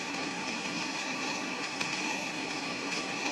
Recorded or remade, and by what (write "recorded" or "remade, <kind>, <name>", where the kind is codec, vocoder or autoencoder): remade, codec, SNAC